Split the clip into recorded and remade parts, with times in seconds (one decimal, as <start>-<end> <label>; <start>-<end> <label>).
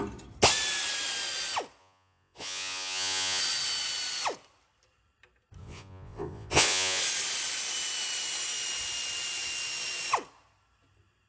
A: 0.0-1.8 recorded; 1.8-3.4 remade; 3.4-5.6 recorded; 5.6-7.0 remade; 7.0-11.3 recorded